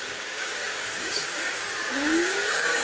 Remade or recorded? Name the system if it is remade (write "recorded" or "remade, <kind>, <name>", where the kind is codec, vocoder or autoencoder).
remade, codec, DAC